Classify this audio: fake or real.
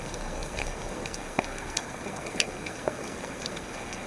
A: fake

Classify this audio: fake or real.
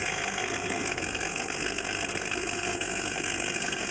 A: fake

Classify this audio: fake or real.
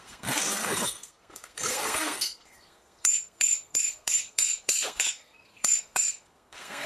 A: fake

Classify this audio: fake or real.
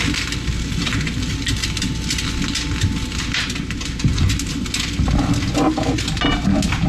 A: real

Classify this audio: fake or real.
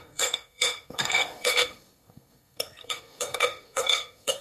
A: fake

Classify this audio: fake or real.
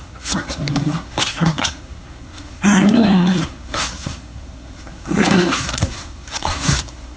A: fake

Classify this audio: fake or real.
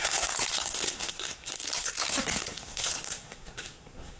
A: fake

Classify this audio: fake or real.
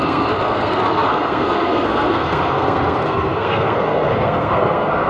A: fake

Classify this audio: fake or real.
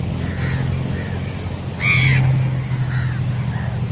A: real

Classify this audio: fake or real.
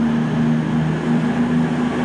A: real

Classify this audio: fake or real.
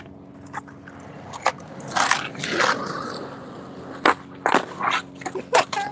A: real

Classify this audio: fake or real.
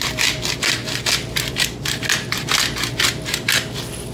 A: real